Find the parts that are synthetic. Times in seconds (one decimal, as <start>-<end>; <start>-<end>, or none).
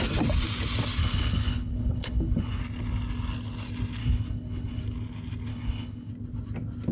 1.0-2.6; 4.0-4.8; 5.5-6.1